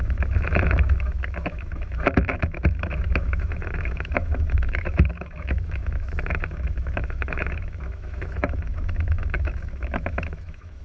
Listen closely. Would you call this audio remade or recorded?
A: remade